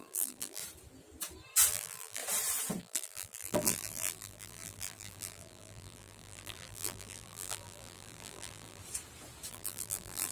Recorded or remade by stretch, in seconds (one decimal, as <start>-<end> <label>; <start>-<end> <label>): 0.0-0.6 remade; 0.6-1.7 recorded; 1.7-2.2 remade; 2.2-2.8 recorded; 2.8-8.8 remade; 8.8-9.5 recorded; 9.5-10.3 remade